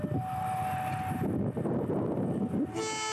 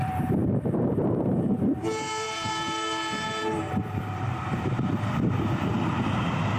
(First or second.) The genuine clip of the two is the first